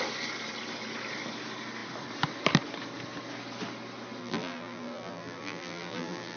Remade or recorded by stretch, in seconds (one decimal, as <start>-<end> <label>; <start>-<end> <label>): 0.0-4.2 recorded; 4.2-6.4 remade